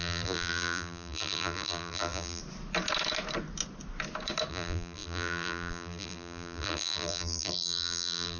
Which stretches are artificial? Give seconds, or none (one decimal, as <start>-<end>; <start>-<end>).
0.0-2.4; 4.5-8.4